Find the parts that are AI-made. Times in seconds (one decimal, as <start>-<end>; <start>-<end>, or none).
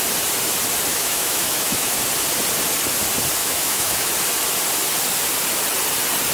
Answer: 0.9-2.0; 3.4-4.1